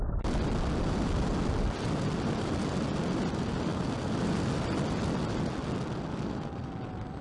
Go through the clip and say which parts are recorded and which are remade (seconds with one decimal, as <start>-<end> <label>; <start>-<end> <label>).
0.0-3.7 recorded; 3.7-4.2 remade; 4.2-6.6 recorded; 6.6-7.2 remade